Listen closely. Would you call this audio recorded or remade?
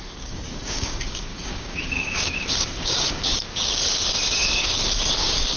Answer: remade